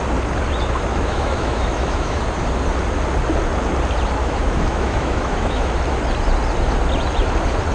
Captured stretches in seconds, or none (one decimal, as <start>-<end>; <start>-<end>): 0.0-0.9; 2.2-4.2; 5.7-7.7